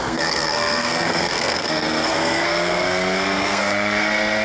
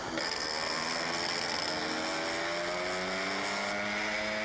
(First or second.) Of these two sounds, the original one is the second